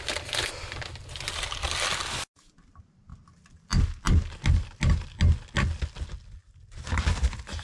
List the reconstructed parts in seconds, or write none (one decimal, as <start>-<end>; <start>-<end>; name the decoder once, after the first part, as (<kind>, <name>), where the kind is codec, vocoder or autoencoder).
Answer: none

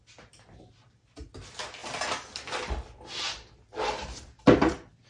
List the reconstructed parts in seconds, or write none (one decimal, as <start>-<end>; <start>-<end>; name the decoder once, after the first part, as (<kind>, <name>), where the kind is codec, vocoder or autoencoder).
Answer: none

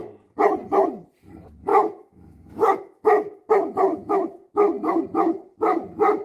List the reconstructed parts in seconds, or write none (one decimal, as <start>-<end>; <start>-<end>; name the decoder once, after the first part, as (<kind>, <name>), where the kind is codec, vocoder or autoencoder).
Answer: 1.7-3.5 (autoencoder, DAC-VAE); 3.9-4.7

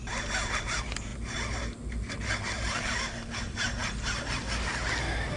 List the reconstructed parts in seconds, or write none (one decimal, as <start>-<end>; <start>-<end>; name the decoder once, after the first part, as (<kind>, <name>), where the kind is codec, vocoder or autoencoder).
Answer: none

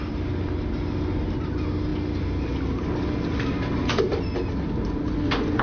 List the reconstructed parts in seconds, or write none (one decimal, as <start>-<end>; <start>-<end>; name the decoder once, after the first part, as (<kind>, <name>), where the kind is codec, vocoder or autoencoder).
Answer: none

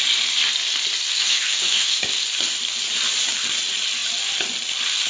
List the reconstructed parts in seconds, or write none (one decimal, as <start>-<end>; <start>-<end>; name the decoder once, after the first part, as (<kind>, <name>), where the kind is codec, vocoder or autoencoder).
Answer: 1.1-2.0 (autoencoder, DAC-VAE)